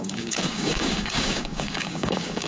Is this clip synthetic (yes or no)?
yes